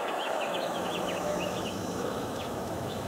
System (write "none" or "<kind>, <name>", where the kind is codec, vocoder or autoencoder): autoencoder, DAC-VAE